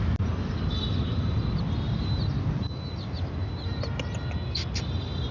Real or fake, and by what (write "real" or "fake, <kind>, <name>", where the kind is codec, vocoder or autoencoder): real